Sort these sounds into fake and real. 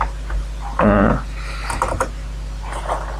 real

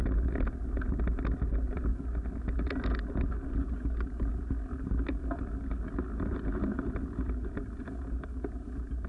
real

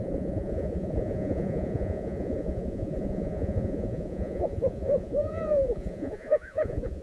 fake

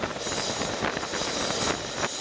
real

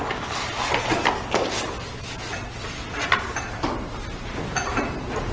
real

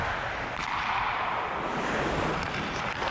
real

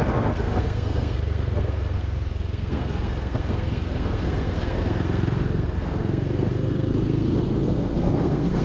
fake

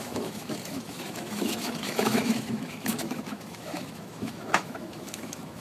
fake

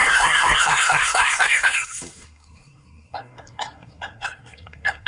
fake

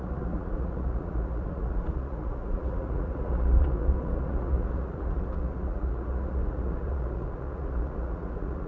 fake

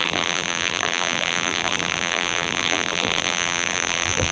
fake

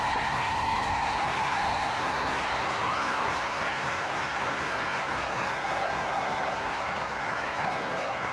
fake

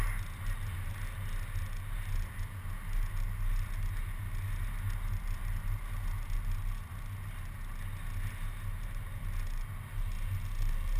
real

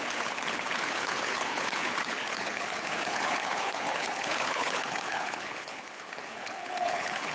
fake